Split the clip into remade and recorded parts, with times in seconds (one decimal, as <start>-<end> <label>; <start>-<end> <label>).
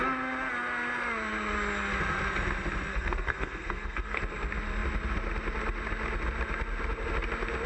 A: 0.0-2.9 recorded; 2.9-4.2 remade; 4.2-7.7 recorded